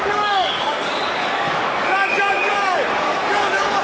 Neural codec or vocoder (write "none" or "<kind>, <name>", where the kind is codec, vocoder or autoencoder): codec, DAC